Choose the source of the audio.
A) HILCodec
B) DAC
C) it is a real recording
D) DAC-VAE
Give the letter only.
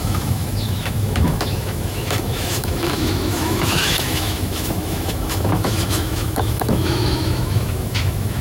D